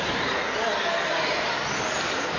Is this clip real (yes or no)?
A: yes